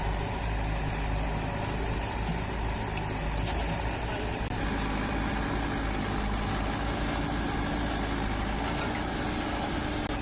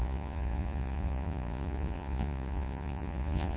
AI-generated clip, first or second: second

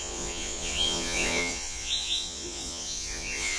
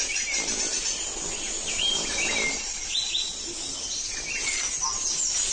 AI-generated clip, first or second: first